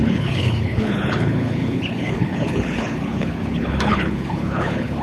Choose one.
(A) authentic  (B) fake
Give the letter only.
B